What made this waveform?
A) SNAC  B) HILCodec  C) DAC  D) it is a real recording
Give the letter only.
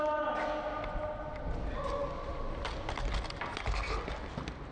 D